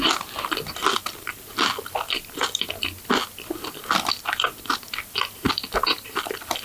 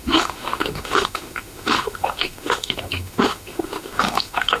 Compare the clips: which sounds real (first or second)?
first